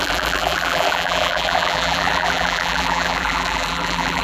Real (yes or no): no